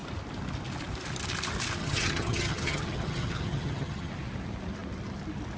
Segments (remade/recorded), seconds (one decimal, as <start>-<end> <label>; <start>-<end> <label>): 0.0-1.8 recorded; 1.8-4.1 remade; 4.1-5.6 recorded